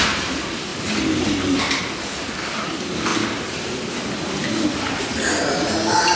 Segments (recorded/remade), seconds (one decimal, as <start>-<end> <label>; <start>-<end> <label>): 0.0-6.2 recorded

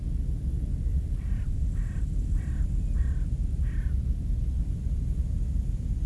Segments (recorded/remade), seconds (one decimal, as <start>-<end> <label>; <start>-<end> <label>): 0.0-0.9 recorded; 0.9-2.8 remade; 2.8-6.1 recorded

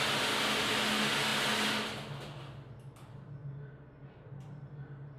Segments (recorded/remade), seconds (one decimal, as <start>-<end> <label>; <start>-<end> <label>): 0.0-5.2 recorded

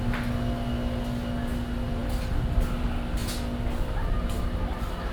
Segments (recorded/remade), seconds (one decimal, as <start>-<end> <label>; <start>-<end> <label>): 0.0-5.1 recorded

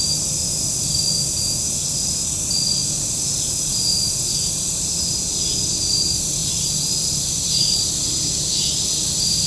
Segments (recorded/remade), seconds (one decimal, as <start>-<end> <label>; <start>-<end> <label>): 0.0-2.8 recorded; 2.8-3.9 remade; 3.9-6.4 recorded; 6.4-9.5 remade

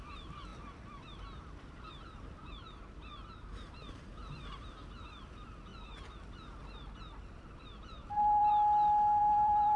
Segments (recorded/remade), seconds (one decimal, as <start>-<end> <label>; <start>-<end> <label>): 0.0-0.5 remade; 0.5-1.4 recorded; 1.4-5.7 remade; 5.7-7.5 recorded; 7.5-8.5 remade; 8.5-9.2 recorded; 9.2-9.8 remade